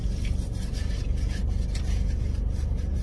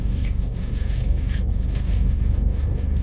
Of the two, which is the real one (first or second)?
first